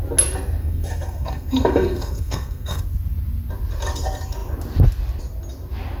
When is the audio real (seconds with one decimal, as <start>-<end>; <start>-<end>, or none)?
0.0-0.6; 2.8-6.0